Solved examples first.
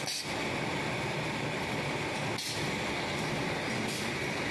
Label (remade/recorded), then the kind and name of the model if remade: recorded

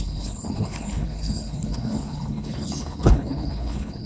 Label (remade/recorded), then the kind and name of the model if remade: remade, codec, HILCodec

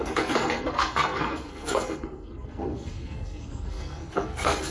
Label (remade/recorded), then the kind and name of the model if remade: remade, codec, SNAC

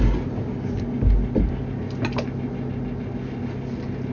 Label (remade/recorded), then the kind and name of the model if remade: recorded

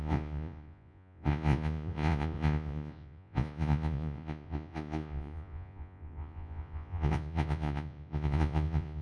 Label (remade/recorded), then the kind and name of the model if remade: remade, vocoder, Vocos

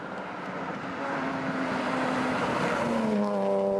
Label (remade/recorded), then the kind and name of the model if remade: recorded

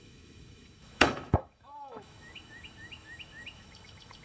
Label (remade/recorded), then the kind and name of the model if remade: remade, autoencoder, DAC-VAE